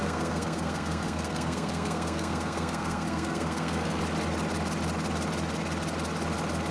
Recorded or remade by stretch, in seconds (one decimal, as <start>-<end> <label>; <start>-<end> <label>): 0.0-4.0 remade; 4.0-6.7 recorded